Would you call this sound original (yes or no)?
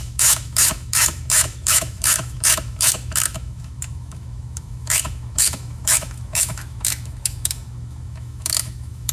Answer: no